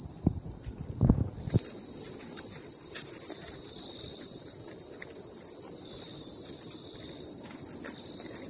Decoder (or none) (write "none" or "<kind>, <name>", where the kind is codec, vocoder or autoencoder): vocoder, BigVGAN v2